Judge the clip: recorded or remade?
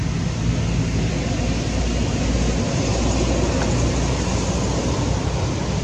recorded